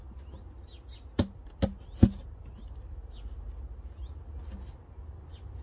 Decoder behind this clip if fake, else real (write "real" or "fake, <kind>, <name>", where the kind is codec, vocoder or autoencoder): real